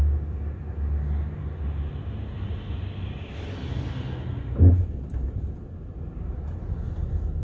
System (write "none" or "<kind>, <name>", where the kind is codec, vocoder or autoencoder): none